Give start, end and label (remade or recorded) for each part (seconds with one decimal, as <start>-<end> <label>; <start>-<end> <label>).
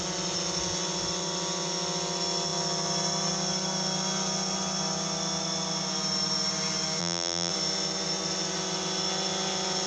0.0-7.0 recorded; 7.0-7.5 remade; 7.5-9.9 recorded